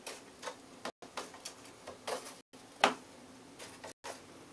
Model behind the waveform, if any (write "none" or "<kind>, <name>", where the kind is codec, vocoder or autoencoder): none